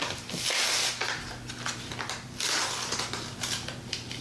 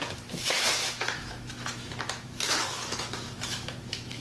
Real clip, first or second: first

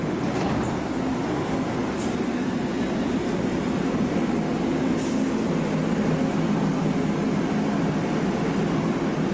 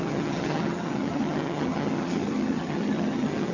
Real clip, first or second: first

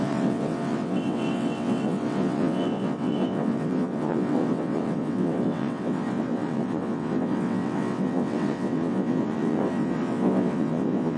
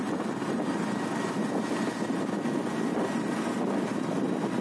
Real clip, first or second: second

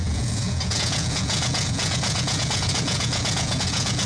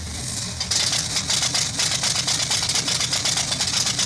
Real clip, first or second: second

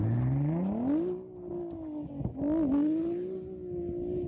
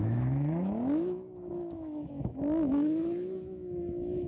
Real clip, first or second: first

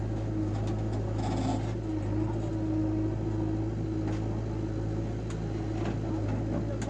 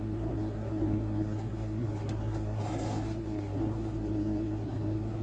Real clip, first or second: first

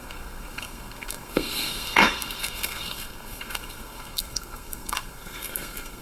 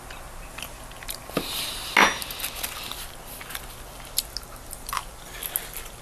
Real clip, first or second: second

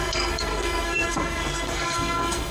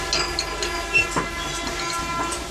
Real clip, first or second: second